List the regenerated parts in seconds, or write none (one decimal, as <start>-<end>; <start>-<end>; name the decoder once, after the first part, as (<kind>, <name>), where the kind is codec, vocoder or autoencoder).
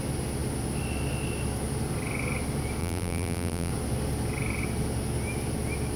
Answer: 2.8-3.7 (vocoder, BigVGAN v2)